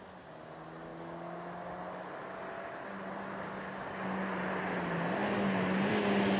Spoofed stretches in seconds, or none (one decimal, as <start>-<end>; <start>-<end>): none